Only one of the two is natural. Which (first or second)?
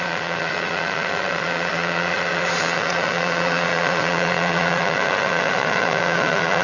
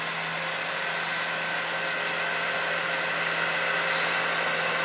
second